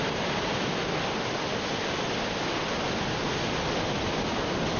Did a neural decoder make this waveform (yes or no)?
no